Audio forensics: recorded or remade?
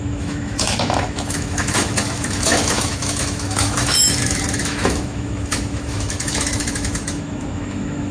remade